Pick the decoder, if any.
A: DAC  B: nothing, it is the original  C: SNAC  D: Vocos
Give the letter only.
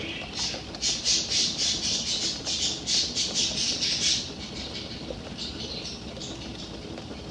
B